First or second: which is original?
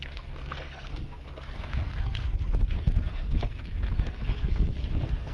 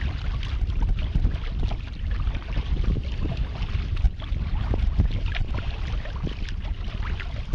second